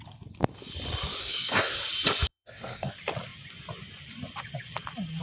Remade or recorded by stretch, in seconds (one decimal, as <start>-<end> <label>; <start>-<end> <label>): 0.0-1.2 recorded; 1.2-1.8 remade; 1.8-2.3 recorded; 2.3-2.9 remade; 2.9-5.2 recorded